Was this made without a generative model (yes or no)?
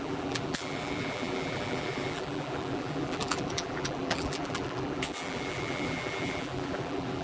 no